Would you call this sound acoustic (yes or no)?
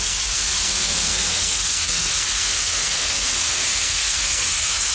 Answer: no